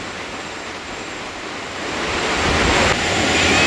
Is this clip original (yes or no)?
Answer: yes